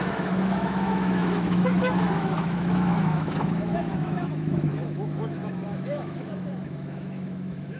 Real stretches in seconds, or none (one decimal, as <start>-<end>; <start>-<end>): none